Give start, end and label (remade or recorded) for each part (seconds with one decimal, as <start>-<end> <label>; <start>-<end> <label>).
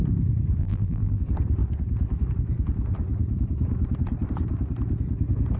0.0-0.6 recorded; 0.6-1.2 remade; 1.2-5.6 recorded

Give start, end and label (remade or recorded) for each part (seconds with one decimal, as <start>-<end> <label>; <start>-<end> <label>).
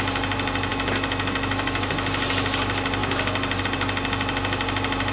0.0-0.7 recorded; 0.7-1.9 remade; 1.9-5.1 recorded